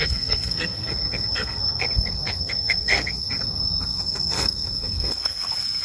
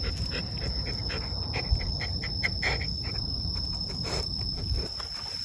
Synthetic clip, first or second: first